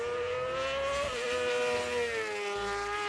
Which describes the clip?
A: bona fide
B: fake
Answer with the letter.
A